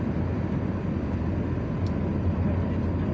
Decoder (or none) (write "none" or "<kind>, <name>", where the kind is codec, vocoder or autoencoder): none